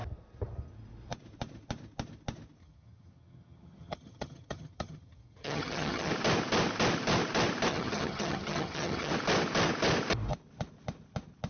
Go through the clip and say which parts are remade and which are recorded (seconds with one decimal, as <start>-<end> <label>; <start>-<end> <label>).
0.0-2.6 recorded; 2.6-6.1 remade; 6.1-7.7 recorded; 7.7-9.1 remade; 9.1-11.5 recorded